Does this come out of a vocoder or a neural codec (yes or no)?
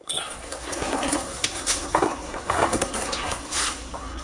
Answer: yes